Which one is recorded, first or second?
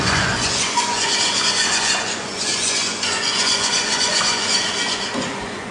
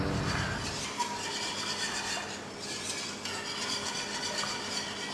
second